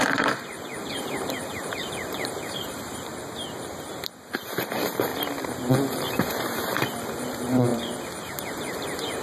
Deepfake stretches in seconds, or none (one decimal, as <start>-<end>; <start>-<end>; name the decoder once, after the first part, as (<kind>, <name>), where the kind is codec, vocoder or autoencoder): 0.0-3.1 (vocoder, BigVGAN v2); 4.4-5.1; 6.1-9.2